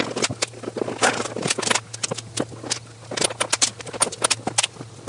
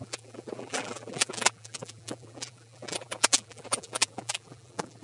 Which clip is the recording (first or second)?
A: first